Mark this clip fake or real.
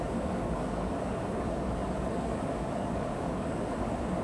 fake